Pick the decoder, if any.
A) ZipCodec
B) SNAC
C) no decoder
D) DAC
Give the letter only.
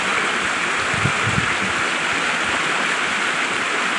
C